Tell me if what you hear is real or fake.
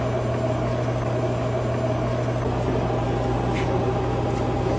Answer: real